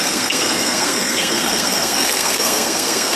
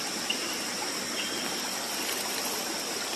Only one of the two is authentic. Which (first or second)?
second